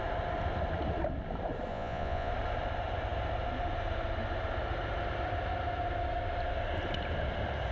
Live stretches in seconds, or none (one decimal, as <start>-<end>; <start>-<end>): 0.0-1.7; 2.3-7.7